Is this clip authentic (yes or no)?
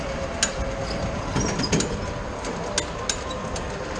yes